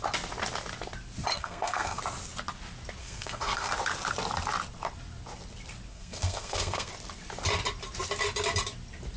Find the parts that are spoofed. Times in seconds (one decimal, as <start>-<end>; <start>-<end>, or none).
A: 1.3-2.0; 3.0-3.7; 5.9-6.9